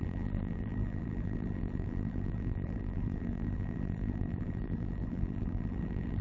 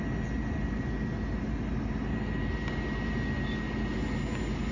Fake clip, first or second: first